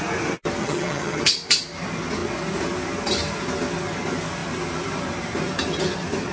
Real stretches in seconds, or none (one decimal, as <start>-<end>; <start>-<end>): 0.0-0.6; 1.2-6.3